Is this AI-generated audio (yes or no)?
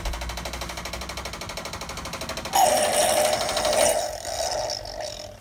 no